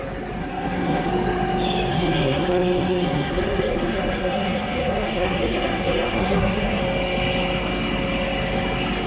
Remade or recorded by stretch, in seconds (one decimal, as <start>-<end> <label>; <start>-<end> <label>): 0.0-0.4 recorded; 0.4-1.1 remade; 1.1-1.9 recorded; 1.9-6.8 remade; 6.8-9.1 recorded